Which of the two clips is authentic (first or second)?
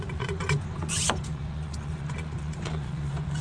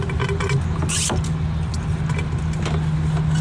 second